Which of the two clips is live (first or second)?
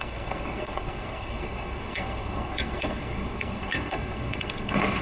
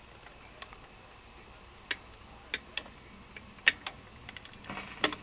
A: second